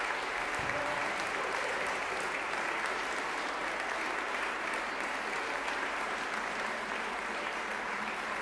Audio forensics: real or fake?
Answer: fake